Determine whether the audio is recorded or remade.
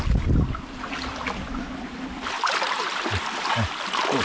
recorded